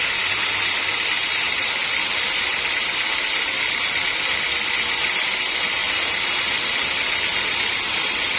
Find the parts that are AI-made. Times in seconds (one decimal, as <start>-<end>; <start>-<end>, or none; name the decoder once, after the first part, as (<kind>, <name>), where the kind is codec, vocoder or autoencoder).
none